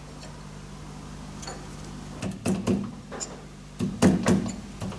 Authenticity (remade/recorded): recorded